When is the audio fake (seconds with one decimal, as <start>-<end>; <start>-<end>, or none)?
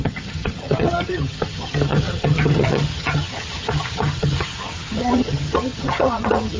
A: 0.0-6.6